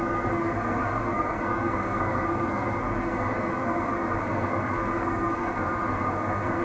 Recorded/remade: remade